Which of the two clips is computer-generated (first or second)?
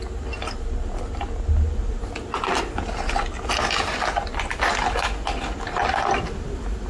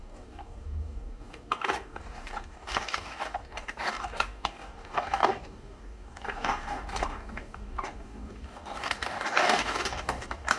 second